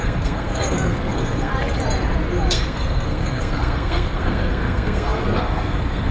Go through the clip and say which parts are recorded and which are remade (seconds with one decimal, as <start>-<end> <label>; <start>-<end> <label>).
0.0-1.5 remade; 1.5-2.5 recorded; 2.5-6.1 remade